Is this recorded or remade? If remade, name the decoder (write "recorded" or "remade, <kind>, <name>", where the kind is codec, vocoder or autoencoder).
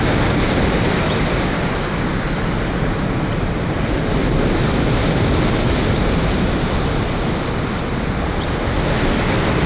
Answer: recorded